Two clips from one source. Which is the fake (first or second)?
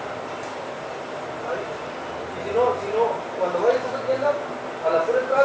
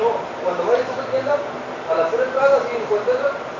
second